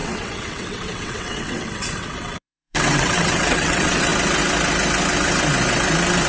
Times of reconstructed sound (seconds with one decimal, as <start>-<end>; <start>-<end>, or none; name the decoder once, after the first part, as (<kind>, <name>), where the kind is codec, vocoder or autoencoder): 0.0-4.1 (vocoder, WaveNeXt)